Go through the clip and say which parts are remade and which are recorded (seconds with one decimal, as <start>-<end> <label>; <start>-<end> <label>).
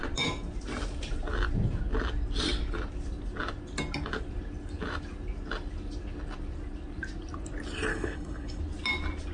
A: 0.0-7.9 recorded; 7.9-8.6 remade; 8.6-9.3 recorded